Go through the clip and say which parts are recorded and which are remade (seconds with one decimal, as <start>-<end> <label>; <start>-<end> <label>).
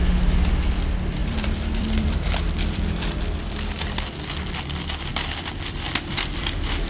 0.0-1.2 recorded; 1.2-3.8 remade; 3.8-6.9 recorded